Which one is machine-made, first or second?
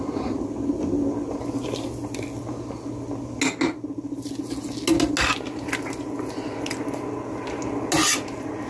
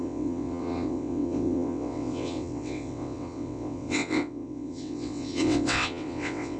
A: second